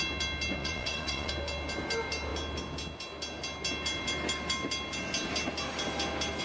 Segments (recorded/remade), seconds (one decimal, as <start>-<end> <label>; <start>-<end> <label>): 0.0-0.6 recorded; 0.6-1.3 remade; 1.3-6.4 recorded